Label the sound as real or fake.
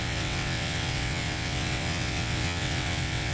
fake